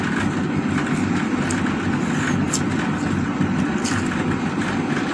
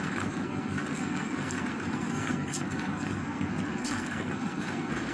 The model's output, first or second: second